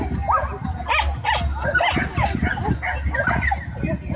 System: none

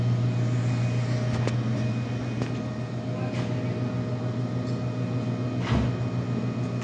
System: none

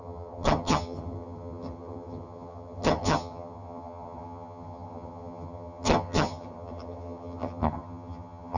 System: vocoder, HiFi-GAN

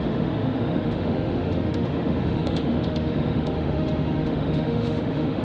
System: autoencoder, DAC-VAE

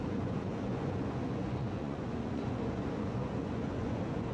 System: vocoder, Vocos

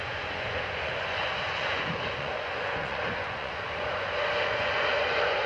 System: vocoder, Vocos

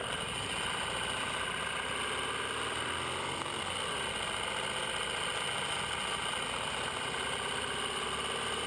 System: none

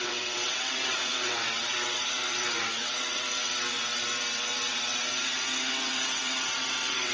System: vocoder, WaveNeXt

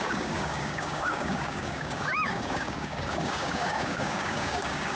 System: codec, DAC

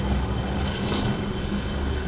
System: codec, DAC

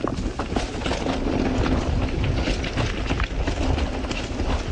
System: none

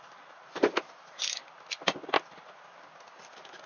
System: none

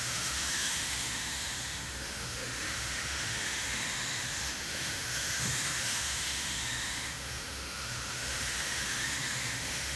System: autoencoder, DAC-VAE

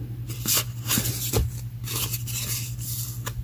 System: none